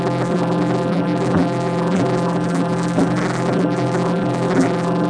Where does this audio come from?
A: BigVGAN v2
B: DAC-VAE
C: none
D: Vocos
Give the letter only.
A